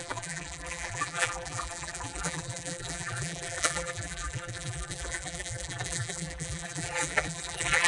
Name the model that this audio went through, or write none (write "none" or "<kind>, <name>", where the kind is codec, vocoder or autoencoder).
vocoder, BigVGAN v2